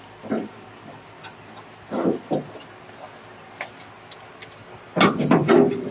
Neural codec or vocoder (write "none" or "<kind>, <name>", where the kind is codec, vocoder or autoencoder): none